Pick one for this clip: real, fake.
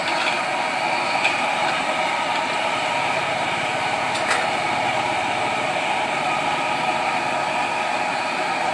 real